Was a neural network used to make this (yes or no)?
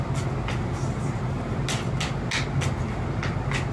no